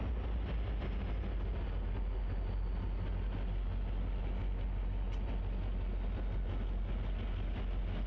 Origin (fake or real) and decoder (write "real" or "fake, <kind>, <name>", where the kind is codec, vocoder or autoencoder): real